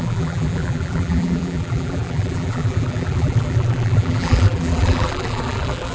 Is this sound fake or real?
fake